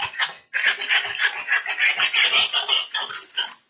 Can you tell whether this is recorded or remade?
recorded